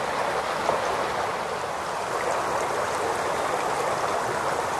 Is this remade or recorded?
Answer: recorded